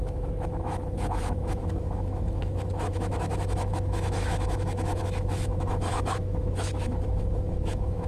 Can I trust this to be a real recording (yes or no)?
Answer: no